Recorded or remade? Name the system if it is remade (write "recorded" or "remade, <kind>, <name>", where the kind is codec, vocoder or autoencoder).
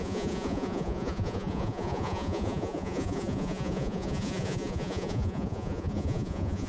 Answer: remade, vocoder, Vocos